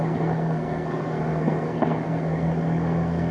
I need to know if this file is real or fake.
fake